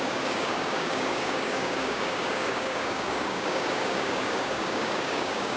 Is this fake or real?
fake